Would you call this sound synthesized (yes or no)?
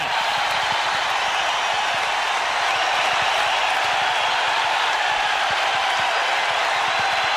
no